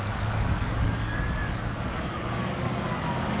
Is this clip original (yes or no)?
no